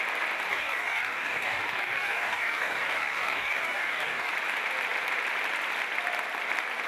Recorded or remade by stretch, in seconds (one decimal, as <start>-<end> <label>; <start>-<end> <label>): 0.0-0.5 recorded; 0.5-4.3 remade; 4.3-6.9 recorded